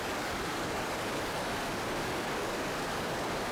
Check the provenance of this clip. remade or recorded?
remade